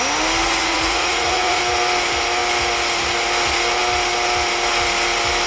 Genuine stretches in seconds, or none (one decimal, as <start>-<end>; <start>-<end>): 0.0-0.4; 1.6-5.5